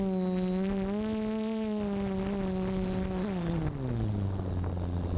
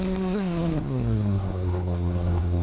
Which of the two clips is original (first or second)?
first